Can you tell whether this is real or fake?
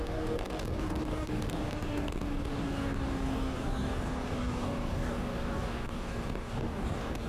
fake